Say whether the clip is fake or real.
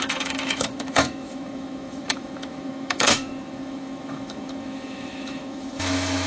fake